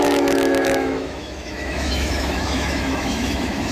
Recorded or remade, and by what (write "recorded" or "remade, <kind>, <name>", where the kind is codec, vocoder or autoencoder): remade, autoencoder, DAC-VAE